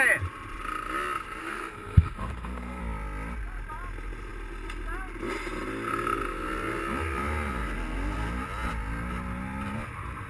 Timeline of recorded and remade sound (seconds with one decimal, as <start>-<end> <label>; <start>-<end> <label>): 0.0-1.4 recorded; 1.4-2.8 remade; 2.8-10.3 recorded